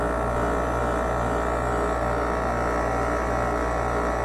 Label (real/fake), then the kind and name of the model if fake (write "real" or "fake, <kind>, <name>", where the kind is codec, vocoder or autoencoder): real